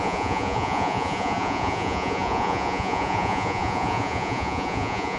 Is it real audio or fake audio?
fake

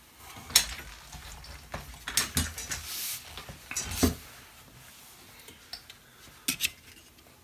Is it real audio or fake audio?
real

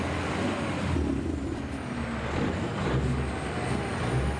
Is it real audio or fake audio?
real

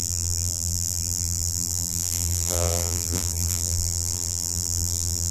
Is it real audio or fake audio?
fake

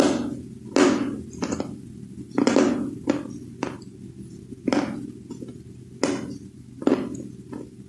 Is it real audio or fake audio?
real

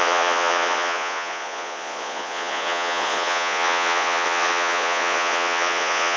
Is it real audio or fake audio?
fake